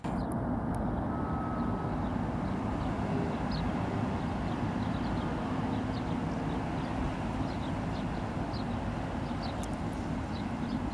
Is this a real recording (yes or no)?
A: yes